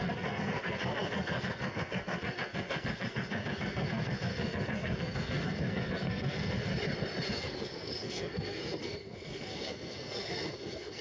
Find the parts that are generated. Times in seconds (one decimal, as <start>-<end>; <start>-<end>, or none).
0.0-6.7; 7.3-11.0